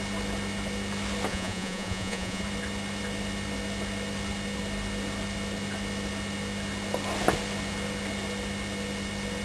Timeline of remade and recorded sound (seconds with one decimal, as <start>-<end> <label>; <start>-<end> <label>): 0.0-1.3 recorded; 1.3-2.4 remade; 2.4-9.4 recorded

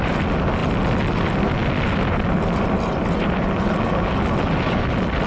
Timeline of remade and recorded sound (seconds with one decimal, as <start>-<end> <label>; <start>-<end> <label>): 0.0-5.3 recorded

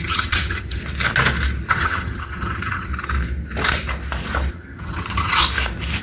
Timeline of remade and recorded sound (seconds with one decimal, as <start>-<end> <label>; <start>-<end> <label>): 0.0-0.8 remade; 0.8-1.7 recorded; 1.7-2.9 remade; 2.9-4.5 recorded; 4.5-5.4 remade; 5.4-6.0 recorded

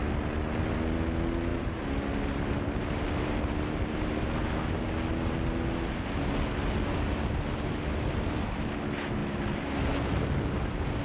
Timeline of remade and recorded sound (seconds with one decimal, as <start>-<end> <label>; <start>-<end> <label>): 0.0-1.5 recorded; 1.5-3.5 remade; 3.5-9.2 recorded; 9.2-9.7 remade; 9.7-11.0 recorded

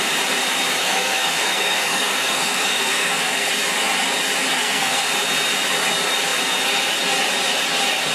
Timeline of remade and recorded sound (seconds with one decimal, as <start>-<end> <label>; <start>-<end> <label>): 0.0-0.8 recorded; 0.8-3.5 remade; 3.5-4.6 recorded; 4.6-5.1 remade; 5.1-8.1 recorded

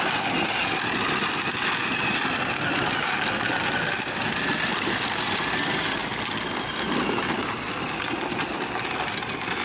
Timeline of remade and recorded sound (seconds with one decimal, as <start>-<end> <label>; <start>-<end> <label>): 0.0-9.6 recorded

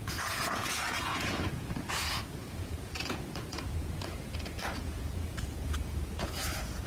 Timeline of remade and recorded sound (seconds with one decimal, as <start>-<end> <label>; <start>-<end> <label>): 0.0-6.9 remade

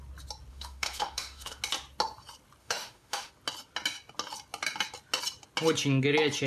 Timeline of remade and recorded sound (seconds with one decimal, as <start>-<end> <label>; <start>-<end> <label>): 0.0-0.5 recorded; 0.5-1.6 remade; 1.6-2.6 recorded; 2.6-3.3 remade; 3.3-6.5 recorded